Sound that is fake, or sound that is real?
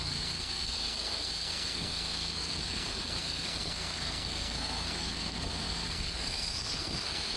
fake